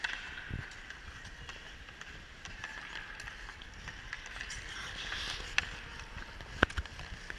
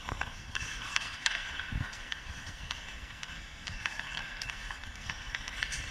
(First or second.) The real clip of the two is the first